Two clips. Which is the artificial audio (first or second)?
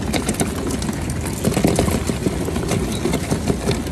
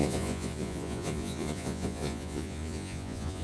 second